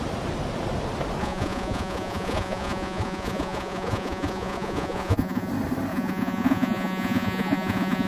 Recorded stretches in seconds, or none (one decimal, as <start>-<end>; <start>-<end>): 0.0-1.2; 5.5-5.9